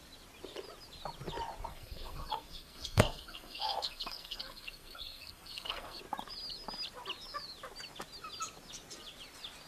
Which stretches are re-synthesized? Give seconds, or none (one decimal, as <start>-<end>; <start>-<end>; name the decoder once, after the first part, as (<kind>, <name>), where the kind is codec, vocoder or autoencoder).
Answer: 1.7-6.0 (codec, SNAC)